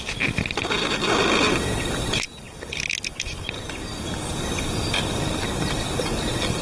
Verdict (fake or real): real